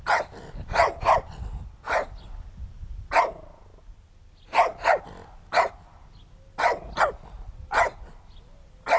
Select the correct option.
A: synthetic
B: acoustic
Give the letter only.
B